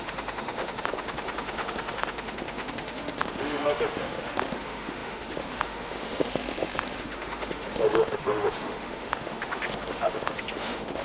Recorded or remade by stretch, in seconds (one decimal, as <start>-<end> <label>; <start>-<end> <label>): 0.0-11.0 remade